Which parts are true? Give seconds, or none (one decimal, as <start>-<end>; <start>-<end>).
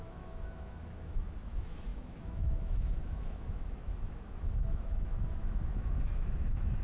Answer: none